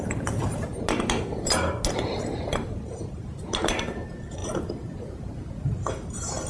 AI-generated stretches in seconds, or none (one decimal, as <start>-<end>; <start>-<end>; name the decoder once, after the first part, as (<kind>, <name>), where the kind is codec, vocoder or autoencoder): 4.4-5.9 (vocoder, BigVGAN v2)